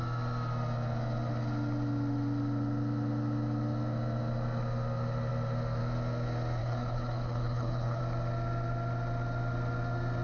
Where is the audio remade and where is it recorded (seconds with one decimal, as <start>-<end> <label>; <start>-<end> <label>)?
0.0-6.6 recorded; 6.6-8.0 remade; 8.0-10.2 recorded